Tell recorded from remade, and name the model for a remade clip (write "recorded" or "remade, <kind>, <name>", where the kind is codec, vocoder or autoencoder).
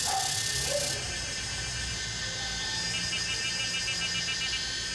recorded